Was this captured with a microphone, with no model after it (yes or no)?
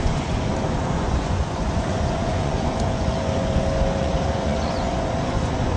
no